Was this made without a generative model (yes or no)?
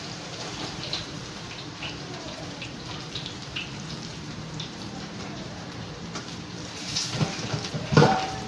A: no